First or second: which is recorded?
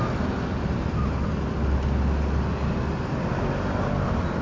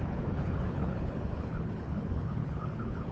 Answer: first